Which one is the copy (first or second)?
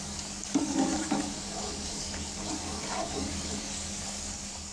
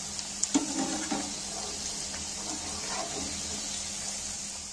first